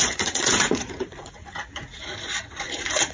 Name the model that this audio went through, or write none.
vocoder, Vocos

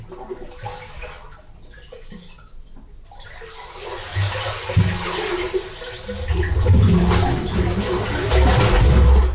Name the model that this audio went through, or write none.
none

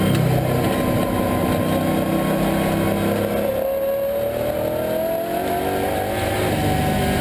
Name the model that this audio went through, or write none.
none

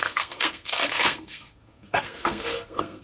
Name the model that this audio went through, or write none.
codec, SNAC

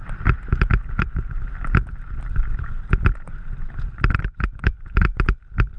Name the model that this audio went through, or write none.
vocoder, BigVGAN v2